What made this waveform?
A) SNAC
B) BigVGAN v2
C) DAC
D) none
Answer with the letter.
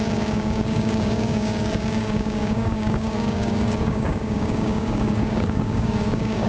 C